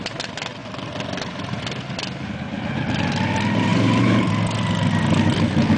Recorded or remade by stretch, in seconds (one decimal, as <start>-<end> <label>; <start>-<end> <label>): 0.0-3.7 recorded; 3.7-4.3 remade; 4.3-5.8 recorded